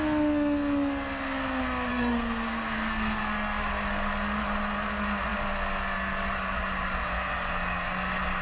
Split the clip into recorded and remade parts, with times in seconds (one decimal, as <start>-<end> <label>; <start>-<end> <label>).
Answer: 0.0-1.9 recorded; 1.9-3.7 remade; 3.7-8.4 recorded